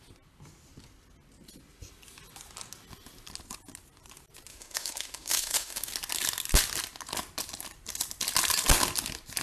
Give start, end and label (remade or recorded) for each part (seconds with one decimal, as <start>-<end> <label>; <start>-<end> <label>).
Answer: 0.0-4.5 recorded; 4.5-5.9 remade; 5.9-9.4 recorded